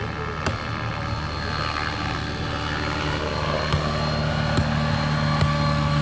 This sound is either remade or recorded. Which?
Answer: recorded